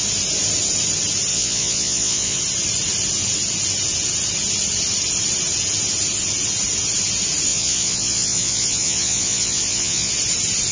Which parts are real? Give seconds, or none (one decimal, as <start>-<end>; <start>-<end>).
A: 0.0-1.3; 2.4-7.5; 10.1-10.7